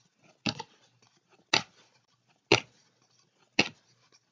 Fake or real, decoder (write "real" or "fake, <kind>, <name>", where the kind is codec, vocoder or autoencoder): real